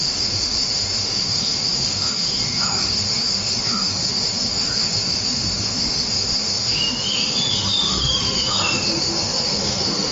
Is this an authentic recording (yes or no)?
no